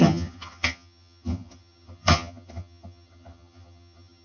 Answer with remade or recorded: remade